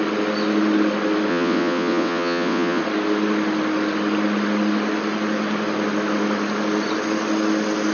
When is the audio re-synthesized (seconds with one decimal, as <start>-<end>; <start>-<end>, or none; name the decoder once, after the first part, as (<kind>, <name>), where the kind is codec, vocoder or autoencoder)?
1.3-2.8 (vocoder, WaveNeXt)